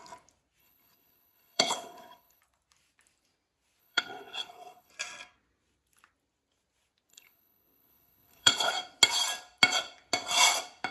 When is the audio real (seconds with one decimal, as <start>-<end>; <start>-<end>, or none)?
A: 0.0-0.6; 2.4-3.8; 4.9-7.1; 8.7-10.9

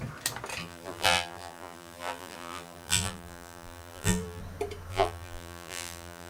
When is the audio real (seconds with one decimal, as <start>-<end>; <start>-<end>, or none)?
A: 0.0-0.6; 4.4-4.9

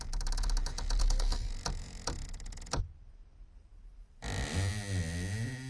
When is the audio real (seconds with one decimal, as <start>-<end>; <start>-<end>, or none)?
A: 0.0-1.0; 1.5-5.7

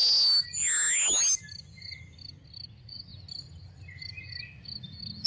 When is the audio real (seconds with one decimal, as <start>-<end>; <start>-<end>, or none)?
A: 0.0-2.7; 3.1-5.3

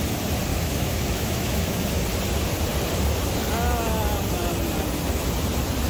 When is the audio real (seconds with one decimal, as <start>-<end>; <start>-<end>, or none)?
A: 0.0-0.5; 2.0-5.9

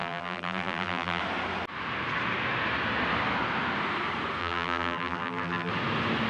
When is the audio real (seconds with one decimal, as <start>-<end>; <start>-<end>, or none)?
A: 1.2-4.4; 5.7-6.3

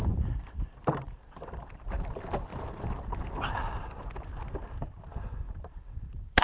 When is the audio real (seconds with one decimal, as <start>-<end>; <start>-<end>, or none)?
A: 0.0-1.2; 2.5-5.6